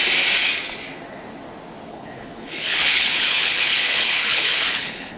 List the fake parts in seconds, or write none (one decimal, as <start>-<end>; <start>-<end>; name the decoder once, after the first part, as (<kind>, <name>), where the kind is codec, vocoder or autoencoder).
1.9-5.2 (codec, HILCodec)